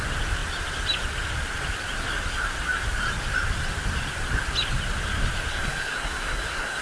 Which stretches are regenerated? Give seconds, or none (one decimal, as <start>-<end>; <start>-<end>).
5.5-6.8